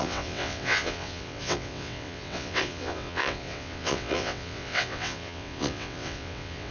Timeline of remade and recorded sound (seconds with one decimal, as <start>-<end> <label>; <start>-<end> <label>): 0.0-6.7 remade